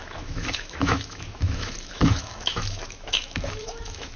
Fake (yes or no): yes